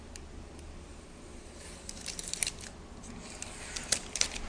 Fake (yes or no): no